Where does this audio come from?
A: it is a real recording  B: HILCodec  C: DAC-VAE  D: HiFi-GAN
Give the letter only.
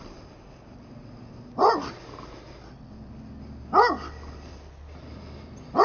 A